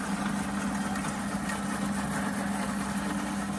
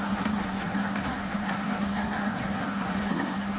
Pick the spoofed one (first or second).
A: second